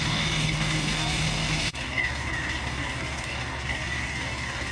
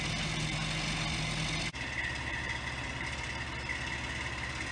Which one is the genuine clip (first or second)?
second